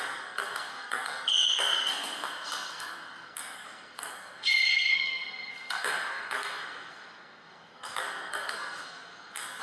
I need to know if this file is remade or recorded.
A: remade